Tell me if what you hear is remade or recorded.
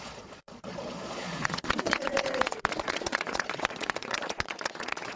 remade